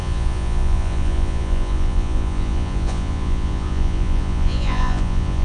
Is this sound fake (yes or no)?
yes